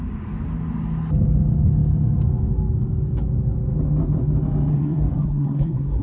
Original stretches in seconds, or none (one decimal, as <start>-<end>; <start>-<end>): 0.0-4.7